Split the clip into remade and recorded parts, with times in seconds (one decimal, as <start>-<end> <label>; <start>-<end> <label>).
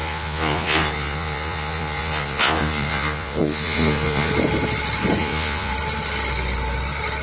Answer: 0.0-4.3 remade; 4.3-5.2 recorded; 5.2-5.7 remade; 5.7-7.2 recorded